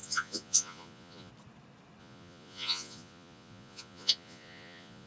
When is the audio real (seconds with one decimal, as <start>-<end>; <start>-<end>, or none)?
1.3-2.0